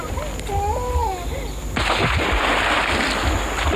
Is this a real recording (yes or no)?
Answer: yes